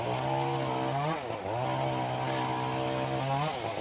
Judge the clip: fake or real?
real